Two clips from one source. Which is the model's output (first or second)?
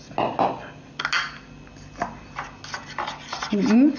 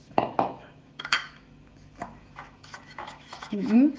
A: second